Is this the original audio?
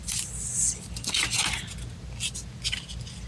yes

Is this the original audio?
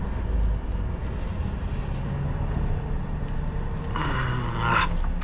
yes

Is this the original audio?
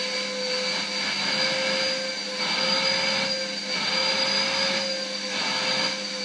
yes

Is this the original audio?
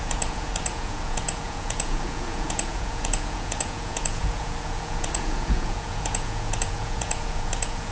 no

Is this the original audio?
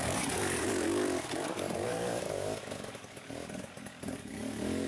no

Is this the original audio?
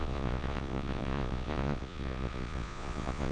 no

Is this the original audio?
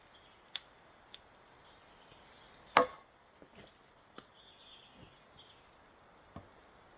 yes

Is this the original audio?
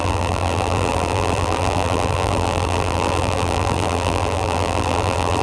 no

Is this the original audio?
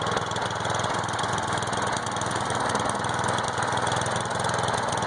yes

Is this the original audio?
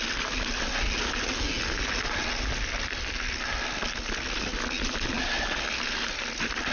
yes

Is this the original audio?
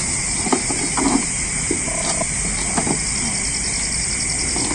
yes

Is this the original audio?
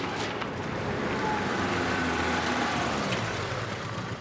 no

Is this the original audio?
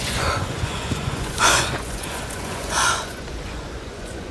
no